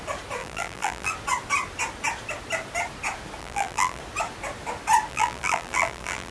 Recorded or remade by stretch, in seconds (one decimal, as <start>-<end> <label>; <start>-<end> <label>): 0.0-0.4 recorded; 0.4-1.1 remade; 1.1-3.4 recorded; 3.4-4.0 remade; 4.0-5.1 recorded; 5.1-6.3 remade

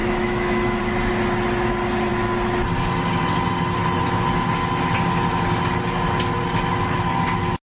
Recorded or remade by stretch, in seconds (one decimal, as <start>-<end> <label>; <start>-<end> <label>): 0.0-0.8 remade; 0.8-7.6 recorded

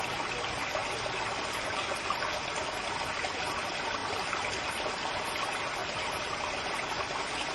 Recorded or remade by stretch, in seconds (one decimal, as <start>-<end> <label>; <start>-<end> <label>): 0.0-5.8 recorded; 5.8-7.5 remade